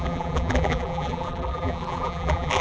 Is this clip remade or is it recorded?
remade